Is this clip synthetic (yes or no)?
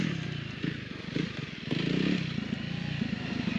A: no